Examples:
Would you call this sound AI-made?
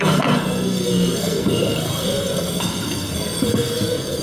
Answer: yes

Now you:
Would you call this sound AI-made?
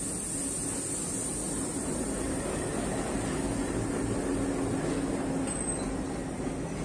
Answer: no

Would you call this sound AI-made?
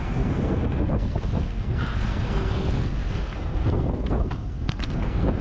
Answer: yes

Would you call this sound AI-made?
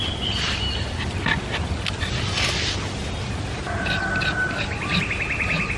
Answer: no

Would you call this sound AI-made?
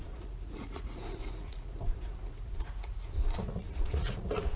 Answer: yes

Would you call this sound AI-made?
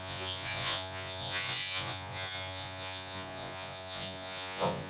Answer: yes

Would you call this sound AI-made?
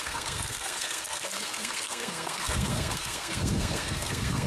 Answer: yes